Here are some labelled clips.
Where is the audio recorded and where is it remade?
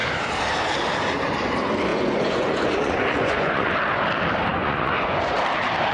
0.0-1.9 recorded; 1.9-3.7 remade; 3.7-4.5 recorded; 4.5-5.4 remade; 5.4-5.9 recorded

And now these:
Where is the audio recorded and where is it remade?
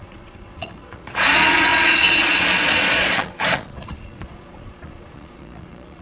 0.0-6.0 remade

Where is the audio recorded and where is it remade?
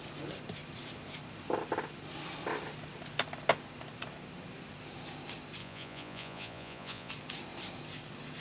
0.0-5.6 recorded; 5.6-7.1 remade; 7.1-8.4 recorded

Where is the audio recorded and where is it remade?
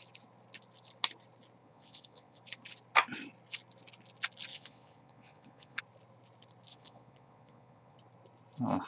0.0-1.6 recorded; 1.6-2.4 remade; 2.4-4.5 recorded; 4.5-5.8 remade; 5.8-6.7 recorded; 6.7-8.0 remade; 8.0-8.9 recorded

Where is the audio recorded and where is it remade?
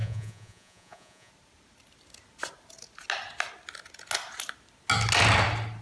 0.0-1.3 remade; 1.3-5.8 recorded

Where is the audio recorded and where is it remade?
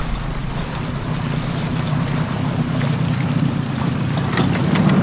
0.0-5.0 recorded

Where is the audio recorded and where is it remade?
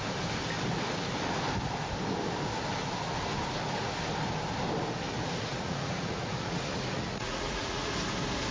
0.0-5.5 recorded; 5.5-7.9 remade; 7.9-8.5 recorded